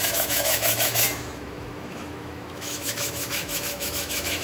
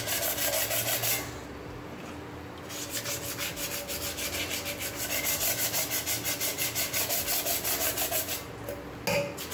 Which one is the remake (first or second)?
first